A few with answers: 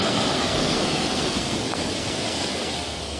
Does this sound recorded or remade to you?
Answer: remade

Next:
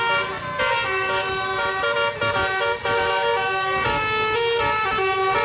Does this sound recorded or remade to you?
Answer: recorded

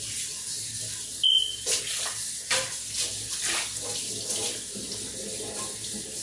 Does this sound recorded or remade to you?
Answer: recorded